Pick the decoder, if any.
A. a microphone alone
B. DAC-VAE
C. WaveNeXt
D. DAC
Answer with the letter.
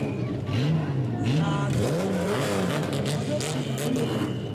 A